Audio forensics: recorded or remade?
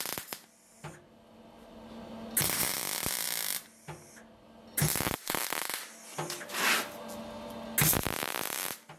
recorded